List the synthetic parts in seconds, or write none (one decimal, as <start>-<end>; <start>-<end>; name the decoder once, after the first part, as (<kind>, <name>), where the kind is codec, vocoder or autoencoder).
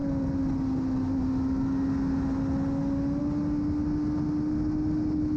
none